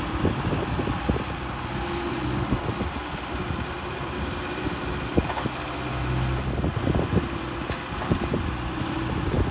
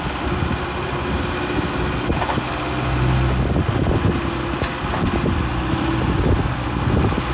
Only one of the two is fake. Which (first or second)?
first